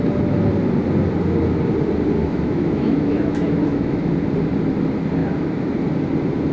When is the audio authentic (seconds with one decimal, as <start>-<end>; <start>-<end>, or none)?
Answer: 0.0-2.2; 4.1-5.2; 5.7-6.5